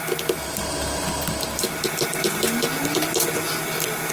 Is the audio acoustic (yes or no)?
yes